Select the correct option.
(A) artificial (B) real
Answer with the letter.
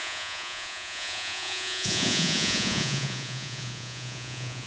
A